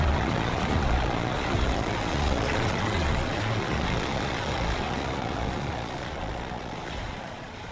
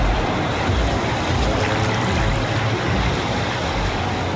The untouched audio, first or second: second